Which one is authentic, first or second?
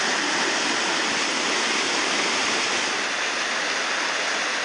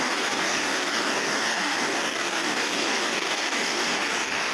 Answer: first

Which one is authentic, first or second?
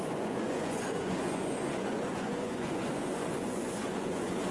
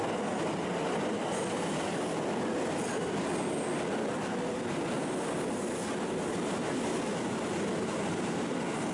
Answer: second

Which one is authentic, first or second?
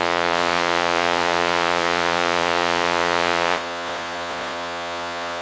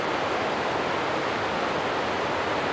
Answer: second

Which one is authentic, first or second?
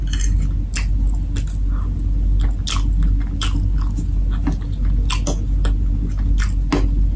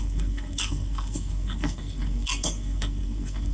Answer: first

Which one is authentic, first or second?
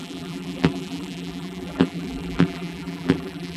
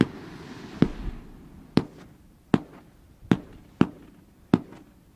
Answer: second